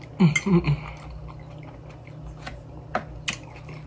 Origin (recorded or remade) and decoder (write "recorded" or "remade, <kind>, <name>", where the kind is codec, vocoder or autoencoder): recorded